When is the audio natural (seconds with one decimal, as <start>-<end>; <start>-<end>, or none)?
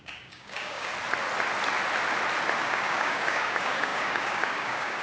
0.9-2.6